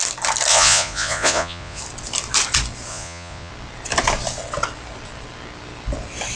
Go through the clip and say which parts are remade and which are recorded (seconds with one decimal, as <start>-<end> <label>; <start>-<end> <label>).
0.0-0.5 recorded; 0.5-1.8 remade; 1.8-2.9 recorded; 2.9-3.5 remade; 3.5-6.4 recorded